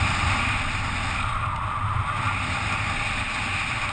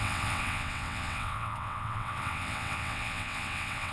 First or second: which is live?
first